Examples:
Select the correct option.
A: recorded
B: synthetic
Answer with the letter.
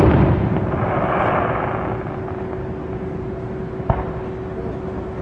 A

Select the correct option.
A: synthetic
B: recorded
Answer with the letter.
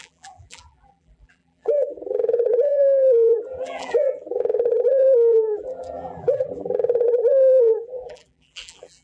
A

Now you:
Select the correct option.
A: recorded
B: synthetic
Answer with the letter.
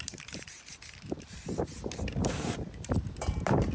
B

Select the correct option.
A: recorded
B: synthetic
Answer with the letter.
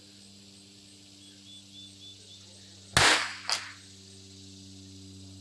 A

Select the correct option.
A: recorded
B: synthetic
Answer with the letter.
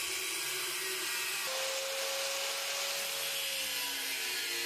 A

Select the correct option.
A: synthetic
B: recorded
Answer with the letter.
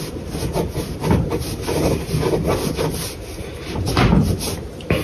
B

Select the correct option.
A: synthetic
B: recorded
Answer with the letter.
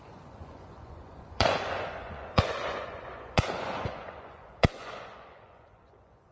A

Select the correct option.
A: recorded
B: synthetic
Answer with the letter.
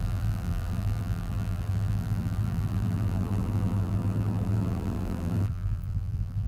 B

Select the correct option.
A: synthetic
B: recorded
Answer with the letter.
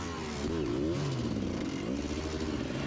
B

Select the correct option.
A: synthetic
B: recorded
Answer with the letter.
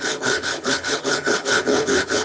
A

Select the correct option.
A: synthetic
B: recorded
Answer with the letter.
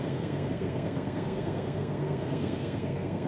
A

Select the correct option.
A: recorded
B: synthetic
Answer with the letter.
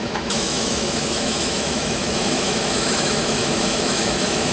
B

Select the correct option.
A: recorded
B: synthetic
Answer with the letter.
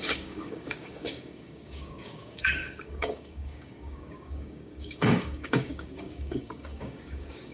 B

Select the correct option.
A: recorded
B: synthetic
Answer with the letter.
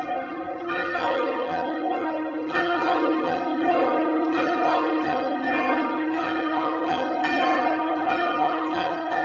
B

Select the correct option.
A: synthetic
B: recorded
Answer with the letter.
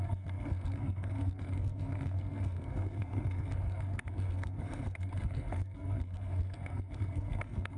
A